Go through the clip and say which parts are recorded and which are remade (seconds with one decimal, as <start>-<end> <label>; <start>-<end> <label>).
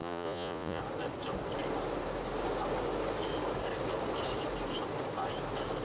0.0-0.8 remade; 0.8-5.8 recorded